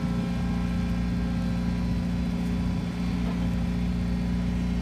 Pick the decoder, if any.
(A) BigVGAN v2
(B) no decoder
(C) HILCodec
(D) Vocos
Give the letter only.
B